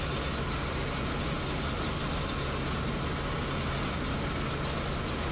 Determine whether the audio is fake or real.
real